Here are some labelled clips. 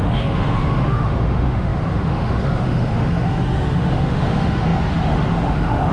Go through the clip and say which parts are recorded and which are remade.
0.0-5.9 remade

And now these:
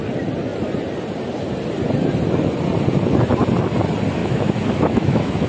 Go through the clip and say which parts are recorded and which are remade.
0.0-4.2 recorded; 4.2-5.5 remade

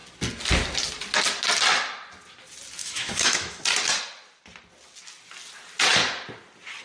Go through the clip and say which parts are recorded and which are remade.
0.0-2.8 recorded; 2.8-3.6 remade; 3.6-6.8 recorded